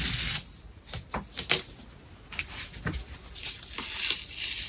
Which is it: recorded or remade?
recorded